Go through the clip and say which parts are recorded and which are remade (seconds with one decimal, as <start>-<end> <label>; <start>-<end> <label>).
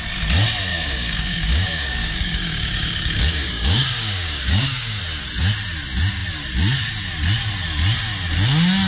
0.0-0.7 recorded; 0.7-5.0 remade; 5.0-8.9 recorded